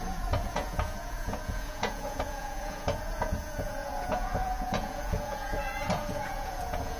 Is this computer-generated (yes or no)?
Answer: yes